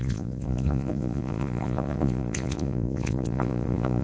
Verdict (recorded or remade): remade